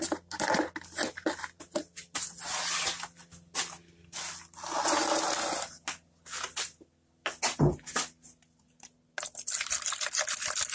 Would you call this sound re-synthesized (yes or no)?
no